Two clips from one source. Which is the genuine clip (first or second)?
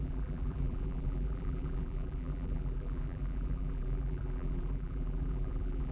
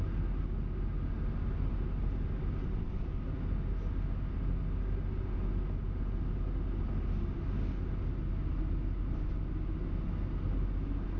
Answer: second